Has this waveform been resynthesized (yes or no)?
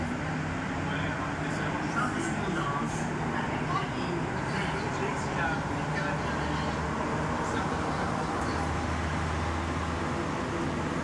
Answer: no